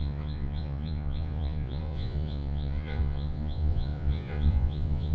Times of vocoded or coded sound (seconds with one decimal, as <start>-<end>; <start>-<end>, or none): 0.0-5.1

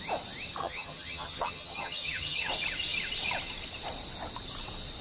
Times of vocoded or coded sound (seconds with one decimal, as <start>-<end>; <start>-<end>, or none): 0.6-2.5

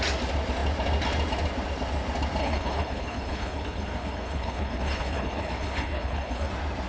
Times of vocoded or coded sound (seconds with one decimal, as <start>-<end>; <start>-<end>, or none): 2.4-6.5

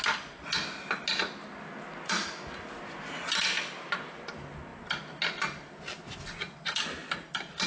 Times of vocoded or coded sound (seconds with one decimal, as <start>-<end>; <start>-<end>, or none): none

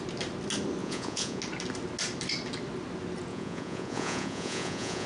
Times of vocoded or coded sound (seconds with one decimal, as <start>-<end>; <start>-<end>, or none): 0.8-1.4; 3.3-5.1

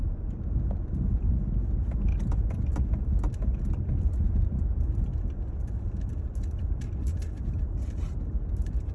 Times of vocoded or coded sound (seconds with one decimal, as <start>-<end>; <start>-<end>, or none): 0.0-0.7; 7.1-8.9